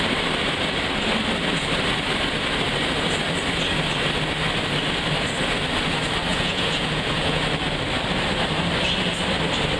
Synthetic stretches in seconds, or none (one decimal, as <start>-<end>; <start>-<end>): 6.3-7.4

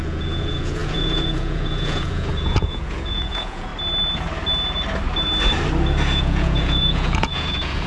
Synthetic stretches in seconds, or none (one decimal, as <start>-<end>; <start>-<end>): 0.0-3.7; 6.2-7.9

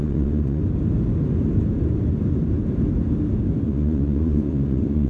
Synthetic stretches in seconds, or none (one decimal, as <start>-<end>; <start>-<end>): 0.0-0.6; 3.7-5.1

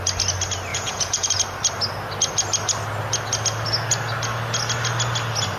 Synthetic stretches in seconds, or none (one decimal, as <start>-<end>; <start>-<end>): 0.7-1.3

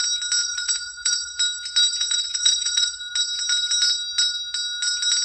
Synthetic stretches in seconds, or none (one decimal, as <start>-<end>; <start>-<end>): 0.4-1.3; 1.9-3.0

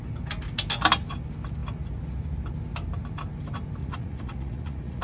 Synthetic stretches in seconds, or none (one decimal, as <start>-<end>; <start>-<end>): 3.8-5.0

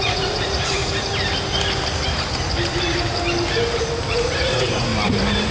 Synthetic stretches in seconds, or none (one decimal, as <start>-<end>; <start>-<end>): 0.0-0.8; 4.1-4.9

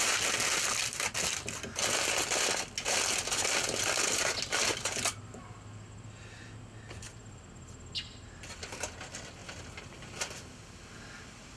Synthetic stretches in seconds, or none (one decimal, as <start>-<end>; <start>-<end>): none